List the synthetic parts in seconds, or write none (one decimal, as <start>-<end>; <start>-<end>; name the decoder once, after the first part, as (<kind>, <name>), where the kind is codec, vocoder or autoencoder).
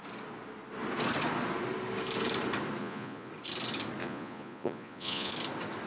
2.8-3.3 (vocoder, Vocos); 4.0-5.3